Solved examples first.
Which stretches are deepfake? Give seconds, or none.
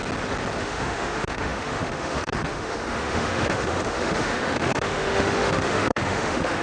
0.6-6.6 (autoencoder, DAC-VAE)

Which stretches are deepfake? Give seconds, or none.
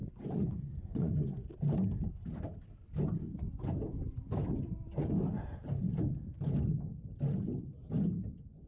0.0-1.5 (vocoder, Vocos)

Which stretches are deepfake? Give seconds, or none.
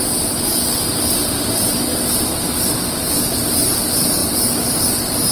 0.5-2.5 (vocoder, BigVGAN v2); 4.2-4.8